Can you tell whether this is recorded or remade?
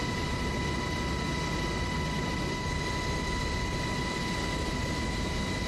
recorded